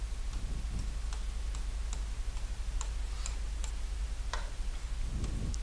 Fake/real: real